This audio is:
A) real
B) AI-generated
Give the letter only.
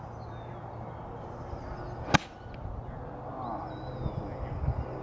A